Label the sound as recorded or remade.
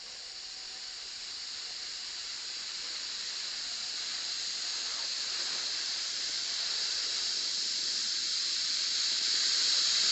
remade